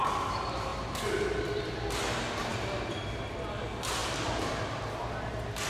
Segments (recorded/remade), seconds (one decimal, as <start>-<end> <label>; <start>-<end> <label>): 0.0-4.0 recorded; 4.0-4.6 remade; 4.6-5.7 recorded